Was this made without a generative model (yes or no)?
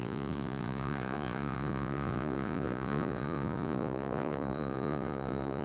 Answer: no